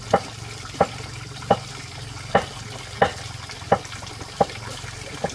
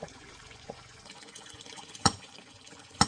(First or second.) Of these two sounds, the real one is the first